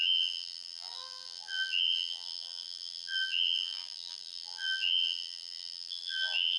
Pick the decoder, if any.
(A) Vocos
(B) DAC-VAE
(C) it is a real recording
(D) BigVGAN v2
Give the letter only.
D